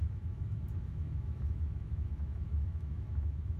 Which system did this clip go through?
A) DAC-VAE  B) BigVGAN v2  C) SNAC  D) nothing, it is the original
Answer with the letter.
A